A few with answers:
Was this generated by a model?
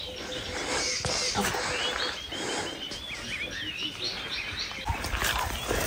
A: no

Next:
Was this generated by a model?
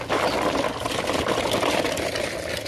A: no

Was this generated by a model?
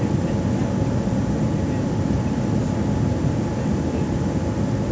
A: no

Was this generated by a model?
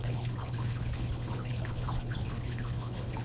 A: yes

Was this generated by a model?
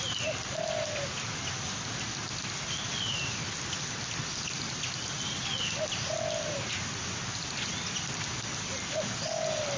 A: no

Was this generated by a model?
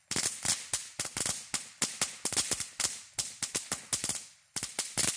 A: no